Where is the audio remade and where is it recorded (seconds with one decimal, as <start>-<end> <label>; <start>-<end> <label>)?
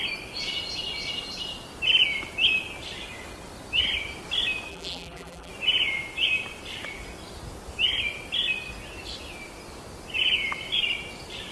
0.0-4.7 recorded; 4.7-5.5 remade; 5.5-11.5 recorded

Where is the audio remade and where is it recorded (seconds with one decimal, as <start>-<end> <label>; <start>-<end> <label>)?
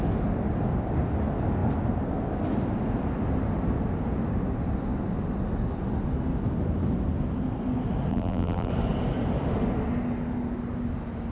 0.0-8.1 recorded; 8.1-8.7 remade; 8.7-11.3 recorded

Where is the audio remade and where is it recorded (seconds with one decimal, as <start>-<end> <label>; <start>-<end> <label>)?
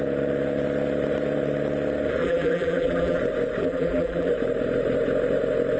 0.0-2.2 recorded; 2.2-3.2 remade; 3.2-3.6 recorded; 3.6-4.3 remade; 4.3-5.8 recorded